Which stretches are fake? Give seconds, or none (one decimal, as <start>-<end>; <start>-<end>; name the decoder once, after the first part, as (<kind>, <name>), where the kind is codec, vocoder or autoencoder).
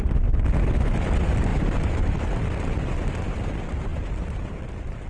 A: 1.5-2.1 (vocoder, BigVGAN v2); 3.9-5.1